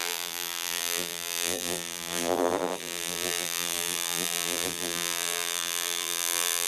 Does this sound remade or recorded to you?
remade